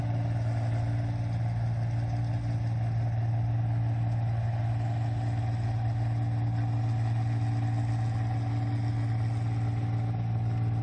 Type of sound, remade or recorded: recorded